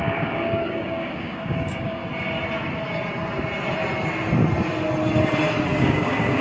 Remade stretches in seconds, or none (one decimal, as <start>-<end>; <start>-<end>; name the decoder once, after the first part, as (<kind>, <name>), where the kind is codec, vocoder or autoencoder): 0.0-2.0 (codec, DAC); 5.8-6.4